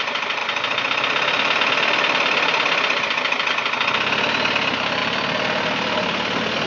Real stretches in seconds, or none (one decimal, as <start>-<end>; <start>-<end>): 0.0-6.7